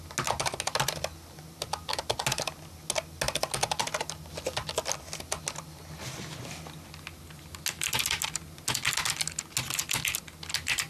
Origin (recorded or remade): recorded